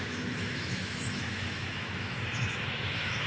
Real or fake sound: fake